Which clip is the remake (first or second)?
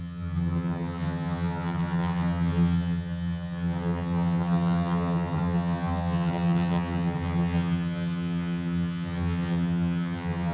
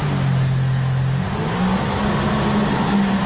first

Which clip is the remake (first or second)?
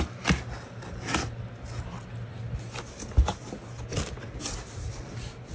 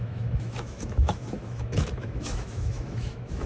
second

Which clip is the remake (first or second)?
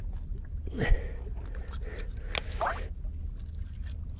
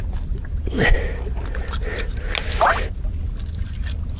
second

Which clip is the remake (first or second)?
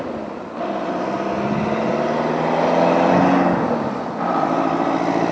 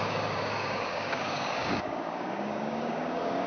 second